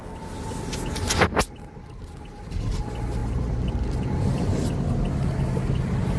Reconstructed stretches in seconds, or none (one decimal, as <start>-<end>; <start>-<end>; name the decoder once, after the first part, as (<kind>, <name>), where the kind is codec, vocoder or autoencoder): none